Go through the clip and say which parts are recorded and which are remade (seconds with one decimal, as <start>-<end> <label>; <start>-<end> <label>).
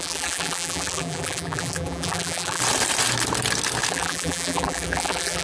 0.0-2.6 remade; 2.6-3.9 recorded; 3.9-5.4 remade